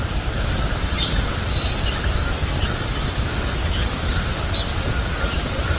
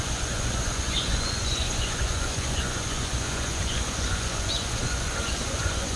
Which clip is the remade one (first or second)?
second